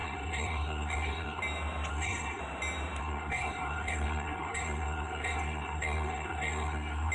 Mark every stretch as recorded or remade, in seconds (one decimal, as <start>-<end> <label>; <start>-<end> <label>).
0.0-1.4 remade; 1.4-1.9 recorded; 1.9-2.4 remade; 2.4-3.0 recorded; 3.0-7.1 remade